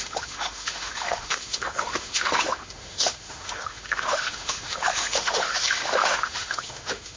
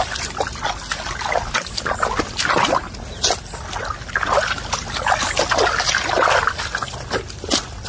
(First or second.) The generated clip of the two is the first